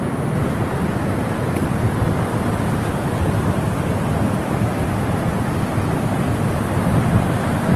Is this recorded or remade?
recorded